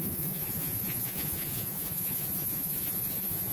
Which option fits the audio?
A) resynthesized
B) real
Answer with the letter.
A